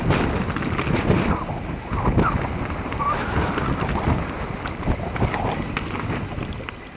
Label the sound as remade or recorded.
recorded